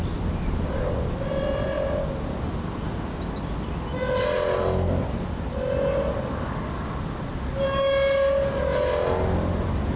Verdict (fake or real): real